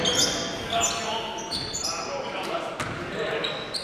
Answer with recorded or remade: recorded